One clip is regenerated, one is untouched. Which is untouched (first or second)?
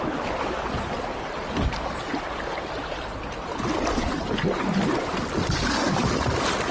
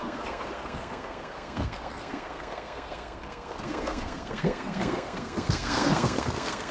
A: first